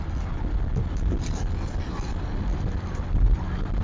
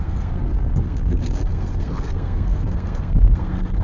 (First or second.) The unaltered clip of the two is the first